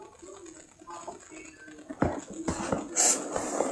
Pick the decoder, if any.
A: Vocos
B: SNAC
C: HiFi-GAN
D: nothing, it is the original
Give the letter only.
D